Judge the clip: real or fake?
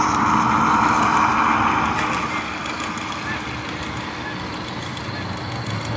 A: real